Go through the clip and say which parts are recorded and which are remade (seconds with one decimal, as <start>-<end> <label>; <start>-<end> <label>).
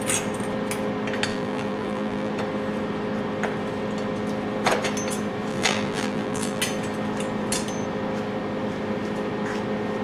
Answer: 0.0-1.3 recorded; 1.3-2.3 remade; 2.3-5.5 recorded; 5.5-6.6 remade; 6.6-10.0 recorded